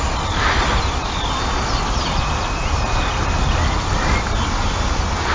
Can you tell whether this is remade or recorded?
recorded